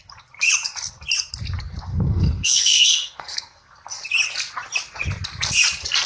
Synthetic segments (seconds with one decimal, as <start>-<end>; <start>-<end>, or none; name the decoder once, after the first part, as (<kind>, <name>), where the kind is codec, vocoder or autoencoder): 1.9-3.7 (codec, SNAC)